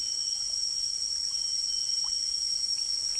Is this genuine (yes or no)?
yes